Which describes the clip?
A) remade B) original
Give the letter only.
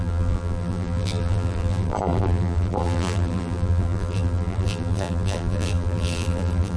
A